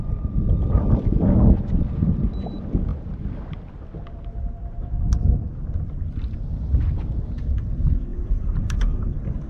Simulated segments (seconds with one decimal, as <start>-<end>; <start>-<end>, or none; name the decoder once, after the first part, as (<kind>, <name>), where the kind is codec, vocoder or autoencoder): 8.1-9.5 (vocoder, BigVGAN v2)